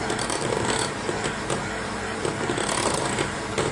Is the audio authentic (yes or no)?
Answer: yes